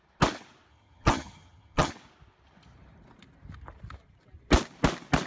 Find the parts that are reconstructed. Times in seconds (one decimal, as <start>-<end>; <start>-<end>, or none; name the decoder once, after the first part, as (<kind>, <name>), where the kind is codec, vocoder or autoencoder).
0.7-1.9 (vocoder, HiFi-GAN)